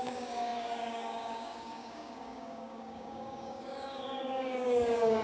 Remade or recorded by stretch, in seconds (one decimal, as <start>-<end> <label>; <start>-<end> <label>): 0.0-5.2 remade